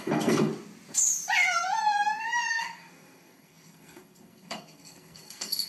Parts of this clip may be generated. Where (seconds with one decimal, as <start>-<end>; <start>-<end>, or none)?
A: 0.0-0.5; 2.5-5.7